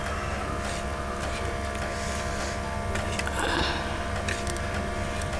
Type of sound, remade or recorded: recorded